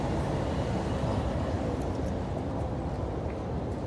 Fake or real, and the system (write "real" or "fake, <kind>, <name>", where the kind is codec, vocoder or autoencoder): real